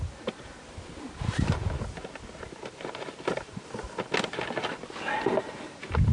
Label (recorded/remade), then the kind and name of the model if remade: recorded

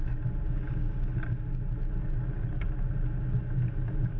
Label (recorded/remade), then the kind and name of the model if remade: recorded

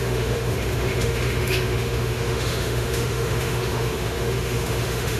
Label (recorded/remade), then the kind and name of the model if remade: remade, autoencoder, DAC-VAE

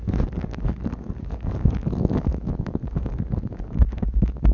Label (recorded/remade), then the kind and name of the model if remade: remade, codec, DAC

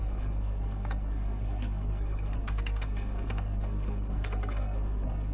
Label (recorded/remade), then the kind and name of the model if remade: remade, codec, SNAC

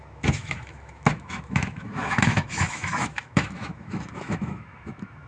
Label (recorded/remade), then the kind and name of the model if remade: remade, autoencoder, DAC-VAE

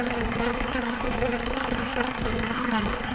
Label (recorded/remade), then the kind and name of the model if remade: remade, codec, SNAC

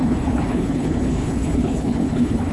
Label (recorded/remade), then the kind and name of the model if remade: remade, codec, HILCodec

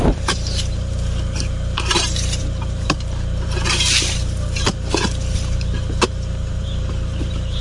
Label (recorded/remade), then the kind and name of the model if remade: remade, vocoder, BigVGAN v2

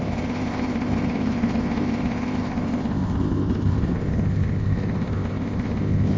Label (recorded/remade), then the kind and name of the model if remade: remade, codec, ZipCodec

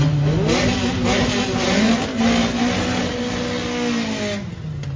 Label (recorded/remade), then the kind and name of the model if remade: recorded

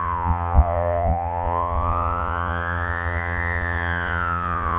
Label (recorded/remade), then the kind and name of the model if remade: remade, vocoder, Vocos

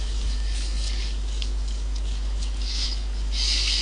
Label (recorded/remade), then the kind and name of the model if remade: remade, codec, DAC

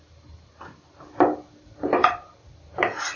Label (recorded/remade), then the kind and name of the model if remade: recorded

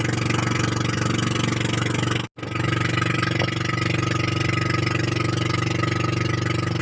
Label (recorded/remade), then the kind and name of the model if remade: recorded